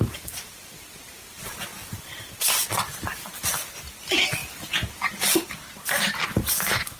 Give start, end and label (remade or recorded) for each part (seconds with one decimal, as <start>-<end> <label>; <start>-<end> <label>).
0.0-4.4 remade; 4.4-7.0 recorded